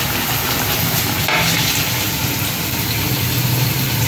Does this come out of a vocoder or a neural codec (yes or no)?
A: no